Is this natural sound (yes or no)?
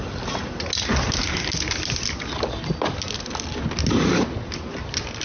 yes